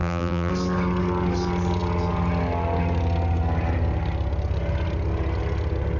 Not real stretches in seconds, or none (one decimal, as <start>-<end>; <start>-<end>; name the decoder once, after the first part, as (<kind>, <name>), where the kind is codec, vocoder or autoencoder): 0.0-0.5 (vocoder, BigVGAN v2)